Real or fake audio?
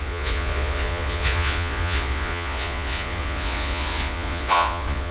fake